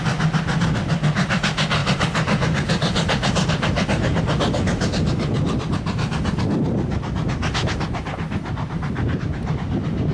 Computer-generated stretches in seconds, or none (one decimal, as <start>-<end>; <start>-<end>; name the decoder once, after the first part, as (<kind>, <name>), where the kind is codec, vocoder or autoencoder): 1.8-4.2 (vocoder, BigVGAN v2)